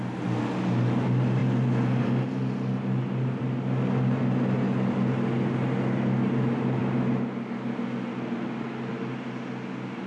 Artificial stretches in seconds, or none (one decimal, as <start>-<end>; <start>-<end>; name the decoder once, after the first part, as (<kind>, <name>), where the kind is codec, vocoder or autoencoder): none